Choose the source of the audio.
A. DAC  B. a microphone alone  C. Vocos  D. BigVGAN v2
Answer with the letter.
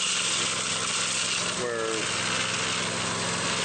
B